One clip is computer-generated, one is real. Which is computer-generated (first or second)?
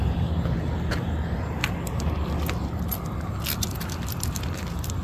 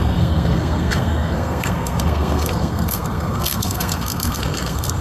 second